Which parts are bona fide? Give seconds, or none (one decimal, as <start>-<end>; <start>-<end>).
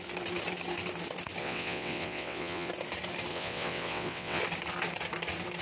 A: 0.0-1.4; 2.7-3.3; 4.4-5.6